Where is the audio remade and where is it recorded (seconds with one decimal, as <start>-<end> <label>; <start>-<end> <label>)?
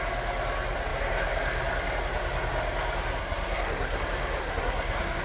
0.0-3.2 recorded; 3.2-4.0 remade; 4.0-4.4 recorded; 4.4-5.2 remade